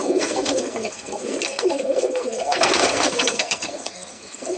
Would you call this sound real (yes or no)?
no